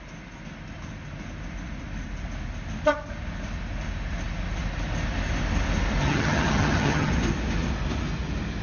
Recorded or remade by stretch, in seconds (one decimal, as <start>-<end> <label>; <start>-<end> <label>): 0.0-6.0 recorded; 6.0-7.1 remade; 7.1-8.6 recorded